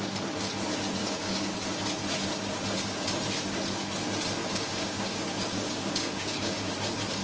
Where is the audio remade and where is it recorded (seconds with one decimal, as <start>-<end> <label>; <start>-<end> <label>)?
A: 0.0-1.0 recorded; 1.0-1.5 remade; 1.5-4.4 recorded; 4.4-6.7 remade; 6.7-7.2 recorded